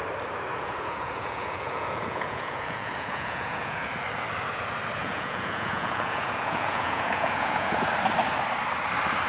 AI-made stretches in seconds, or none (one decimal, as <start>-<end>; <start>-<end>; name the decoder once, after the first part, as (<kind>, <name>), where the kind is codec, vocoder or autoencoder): 0.5-3.9 (vocoder, Vocos); 5.0-7.9

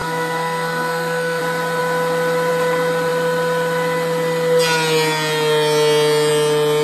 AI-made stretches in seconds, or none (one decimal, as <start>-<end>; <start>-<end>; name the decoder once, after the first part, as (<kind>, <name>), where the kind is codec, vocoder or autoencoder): 0.0-1.4 (codec, SNAC)

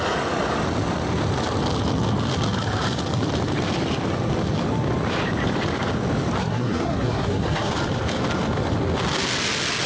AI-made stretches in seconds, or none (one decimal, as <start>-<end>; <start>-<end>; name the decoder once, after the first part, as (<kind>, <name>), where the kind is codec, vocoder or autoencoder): 6.4-7.7 (codec, SNAC)

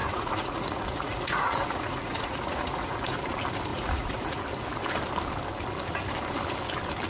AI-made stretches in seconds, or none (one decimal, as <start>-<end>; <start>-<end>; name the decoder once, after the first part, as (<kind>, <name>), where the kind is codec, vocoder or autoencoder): 0.0-3.2 (vocoder, Vocos); 3.7-4.4

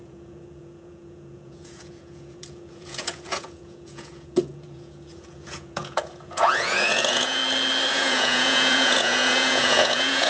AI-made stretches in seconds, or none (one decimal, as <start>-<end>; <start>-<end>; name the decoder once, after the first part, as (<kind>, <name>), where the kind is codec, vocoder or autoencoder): 0.0-7.4 (vocoder, Vocos); 7.9-10.3

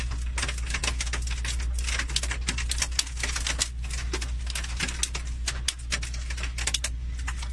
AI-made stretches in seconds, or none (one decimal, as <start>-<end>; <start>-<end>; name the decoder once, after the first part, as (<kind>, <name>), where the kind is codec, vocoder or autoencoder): none

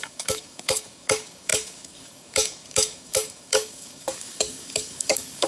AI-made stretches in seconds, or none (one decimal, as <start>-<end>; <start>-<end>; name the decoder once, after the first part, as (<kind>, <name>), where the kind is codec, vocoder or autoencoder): 0.0-5.5 (codec, DAC)